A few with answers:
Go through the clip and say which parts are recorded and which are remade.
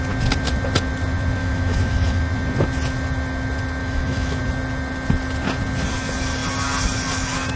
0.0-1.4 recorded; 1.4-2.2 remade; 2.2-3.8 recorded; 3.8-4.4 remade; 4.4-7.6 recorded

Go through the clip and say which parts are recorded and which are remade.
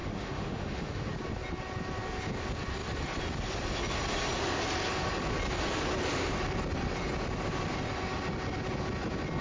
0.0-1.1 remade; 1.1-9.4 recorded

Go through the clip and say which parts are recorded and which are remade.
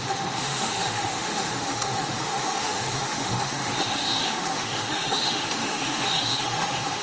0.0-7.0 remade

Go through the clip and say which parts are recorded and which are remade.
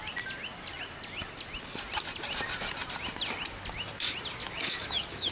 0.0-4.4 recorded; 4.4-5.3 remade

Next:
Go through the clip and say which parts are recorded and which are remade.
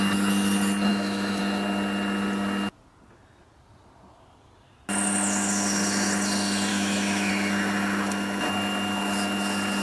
0.0-0.9 recorded; 0.9-1.4 remade; 1.4-6.7 recorded; 6.7-7.3 remade; 7.3-9.8 recorded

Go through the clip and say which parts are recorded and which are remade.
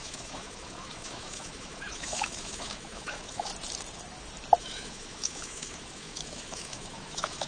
0.0-3.5 remade; 3.5-4.6 recorded; 4.6-7.5 remade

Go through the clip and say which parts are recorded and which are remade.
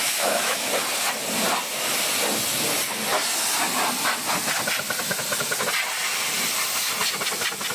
0.0-0.7 remade; 0.7-7.7 recorded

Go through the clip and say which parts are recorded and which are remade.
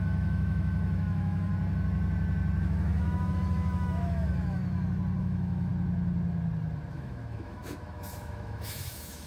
0.0-1.5 remade; 1.5-2.6 recorded; 2.6-4.6 remade; 4.6-5.2 recorded; 5.2-5.7 remade; 5.7-6.9 recorded; 6.9-9.3 remade